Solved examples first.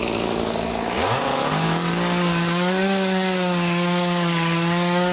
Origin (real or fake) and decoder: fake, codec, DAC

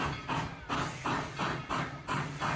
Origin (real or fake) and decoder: real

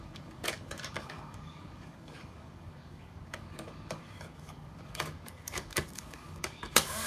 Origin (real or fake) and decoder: fake, codec, DAC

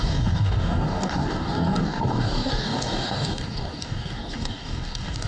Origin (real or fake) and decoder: fake, codec, DAC